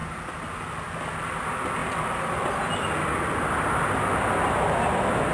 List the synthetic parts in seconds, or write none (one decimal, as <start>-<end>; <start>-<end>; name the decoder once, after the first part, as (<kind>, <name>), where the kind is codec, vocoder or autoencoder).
none